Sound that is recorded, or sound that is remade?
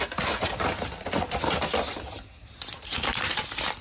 recorded